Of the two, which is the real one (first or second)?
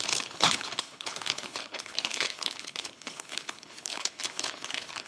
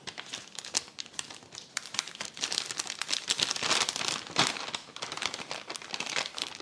second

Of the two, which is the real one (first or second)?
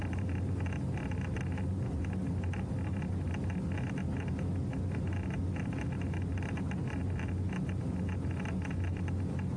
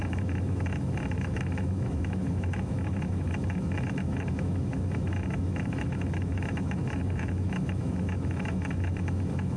first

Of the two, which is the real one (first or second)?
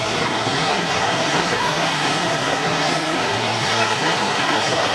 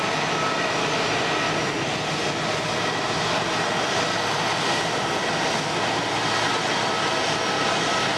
second